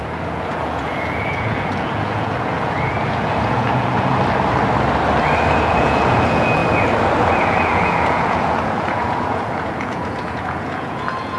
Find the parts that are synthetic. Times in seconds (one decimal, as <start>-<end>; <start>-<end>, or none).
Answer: 0.0-4.1; 5.5-6.6; 7.3-11.4

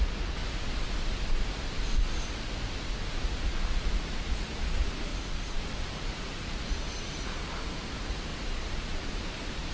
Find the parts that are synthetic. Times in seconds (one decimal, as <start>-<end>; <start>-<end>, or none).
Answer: 0.0-0.4; 3.1-5.1; 5.6-9.7

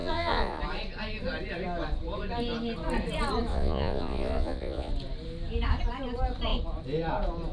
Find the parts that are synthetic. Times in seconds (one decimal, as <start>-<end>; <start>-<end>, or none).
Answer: 0.0-0.6; 3.5-4.9

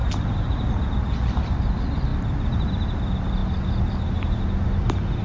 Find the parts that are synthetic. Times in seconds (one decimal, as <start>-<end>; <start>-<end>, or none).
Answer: none

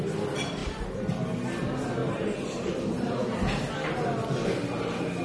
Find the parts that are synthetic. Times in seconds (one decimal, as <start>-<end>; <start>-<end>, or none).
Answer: 0.6-1.2; 2.0-3.2

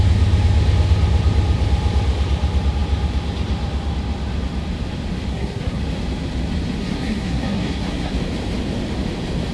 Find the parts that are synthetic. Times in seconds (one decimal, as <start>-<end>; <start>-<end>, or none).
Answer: 5.3-5.8; 6.8-8.1